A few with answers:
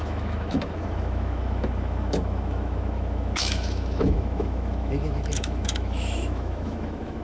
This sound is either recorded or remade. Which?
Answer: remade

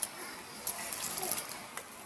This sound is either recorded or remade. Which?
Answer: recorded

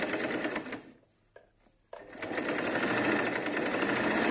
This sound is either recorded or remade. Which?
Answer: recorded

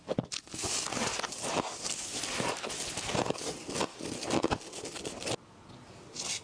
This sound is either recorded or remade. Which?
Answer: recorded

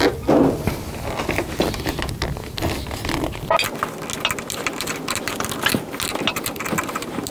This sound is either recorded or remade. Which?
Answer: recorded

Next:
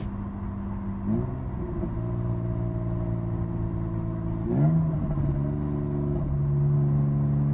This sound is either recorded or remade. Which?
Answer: recorded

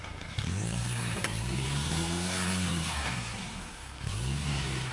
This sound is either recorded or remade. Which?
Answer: remade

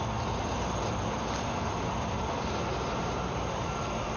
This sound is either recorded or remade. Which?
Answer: remade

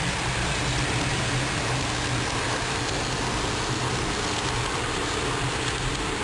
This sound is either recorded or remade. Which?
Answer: recorded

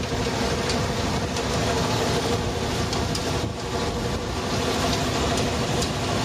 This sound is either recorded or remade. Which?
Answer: recorded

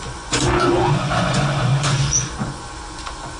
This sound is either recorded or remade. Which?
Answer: remade